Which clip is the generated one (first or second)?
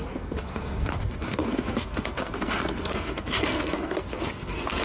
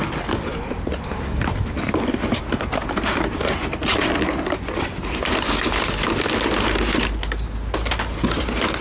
first